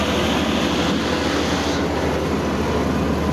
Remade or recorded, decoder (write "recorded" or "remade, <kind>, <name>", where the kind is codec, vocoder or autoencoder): recorded